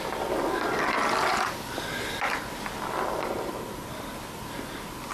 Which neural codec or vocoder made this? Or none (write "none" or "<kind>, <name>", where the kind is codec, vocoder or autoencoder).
none